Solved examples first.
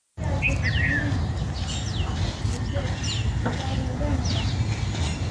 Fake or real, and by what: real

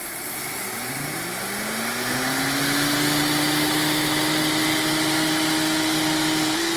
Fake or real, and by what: real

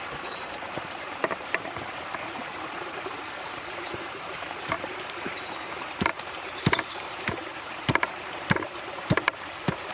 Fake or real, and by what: fake, vocoder, BigVGAN v2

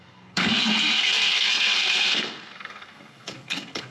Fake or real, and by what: fake, codec, SNAC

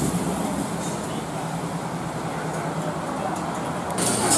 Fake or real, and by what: real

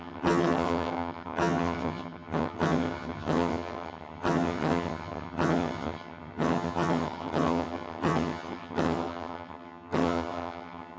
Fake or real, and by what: fake, vocoder, HiFi-GAN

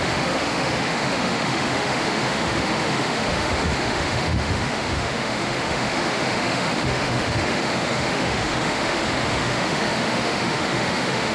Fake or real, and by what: fake, autoencoder, DAC-VAE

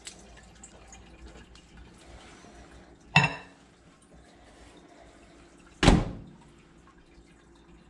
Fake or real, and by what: real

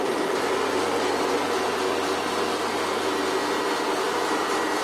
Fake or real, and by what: real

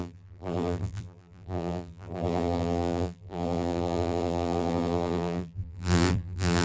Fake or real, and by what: fake, vocoder, BigVGAN v2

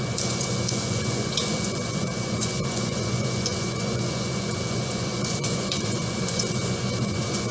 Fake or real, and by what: fake, vocoder, Vocos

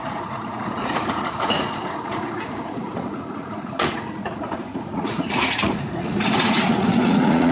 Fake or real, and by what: fake, vocoder, Vocos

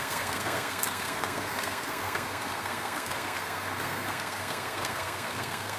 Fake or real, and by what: fake, codec, SNAC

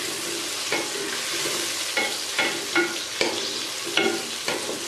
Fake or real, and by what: real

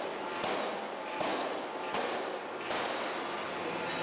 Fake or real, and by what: real